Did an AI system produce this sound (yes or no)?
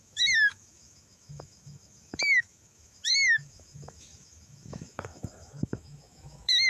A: yes